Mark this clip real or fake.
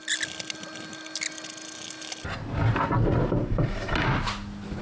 real